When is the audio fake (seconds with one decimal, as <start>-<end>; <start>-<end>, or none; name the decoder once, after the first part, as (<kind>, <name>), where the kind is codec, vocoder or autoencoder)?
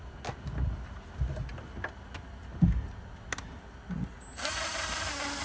none